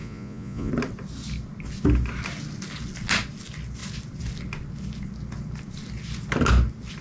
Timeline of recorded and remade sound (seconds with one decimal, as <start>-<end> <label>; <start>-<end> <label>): 0.0-0.7 remade; 0.7-7.0 recorded